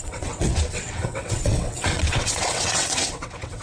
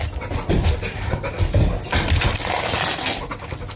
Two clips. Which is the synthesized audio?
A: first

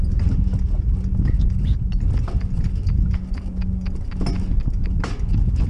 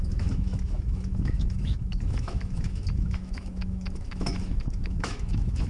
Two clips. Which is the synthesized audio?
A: second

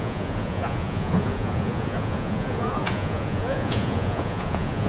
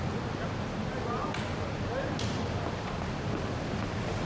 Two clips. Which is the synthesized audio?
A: first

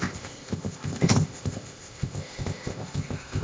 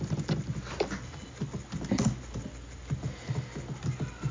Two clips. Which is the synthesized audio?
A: first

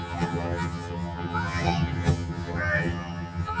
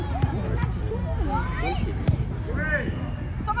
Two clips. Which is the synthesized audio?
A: first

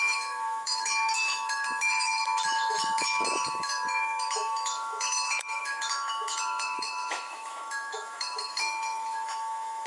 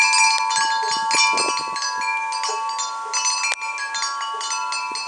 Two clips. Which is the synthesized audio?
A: first